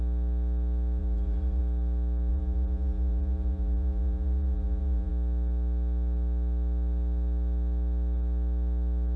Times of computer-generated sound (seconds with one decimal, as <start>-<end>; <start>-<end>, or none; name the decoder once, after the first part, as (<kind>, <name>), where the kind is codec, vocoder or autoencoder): 1.0-1.6 (vocoder, Vocos); 2.3-5.1